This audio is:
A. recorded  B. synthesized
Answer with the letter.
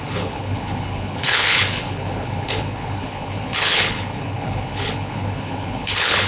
B